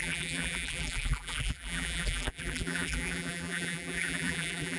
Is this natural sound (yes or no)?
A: no